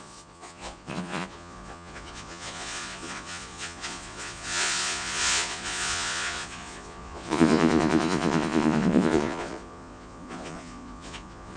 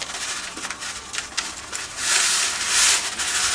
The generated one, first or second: first